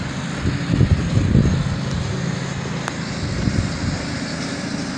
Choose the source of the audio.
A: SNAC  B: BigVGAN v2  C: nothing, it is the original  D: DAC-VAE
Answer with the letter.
C